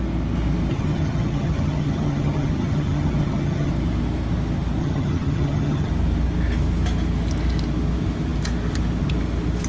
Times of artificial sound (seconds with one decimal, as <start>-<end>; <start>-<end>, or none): 0.7-3.7; 4.8-5.9

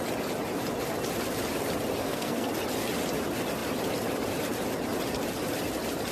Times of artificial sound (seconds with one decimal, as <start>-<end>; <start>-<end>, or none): 2.0-2.5

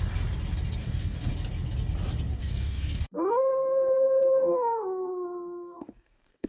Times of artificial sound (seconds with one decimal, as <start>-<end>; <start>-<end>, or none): 0.8-1.3; 2.4-6.5

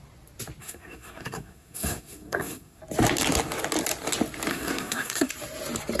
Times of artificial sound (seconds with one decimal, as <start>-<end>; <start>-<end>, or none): 0.6-2.8; 4.5-5.3

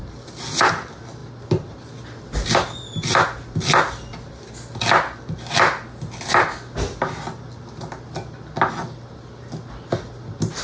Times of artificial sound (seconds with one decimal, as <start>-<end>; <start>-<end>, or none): none

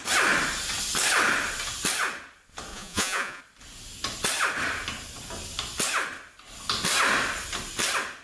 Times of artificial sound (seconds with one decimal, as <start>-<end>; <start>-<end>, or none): 2.7-3.4

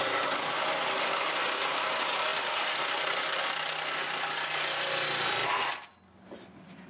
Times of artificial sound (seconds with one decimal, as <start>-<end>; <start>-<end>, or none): none

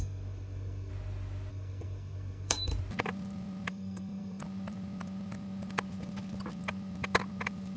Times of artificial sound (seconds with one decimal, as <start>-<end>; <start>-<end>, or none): 0.0-0.9; 1.5-2.7; 3.7-4.4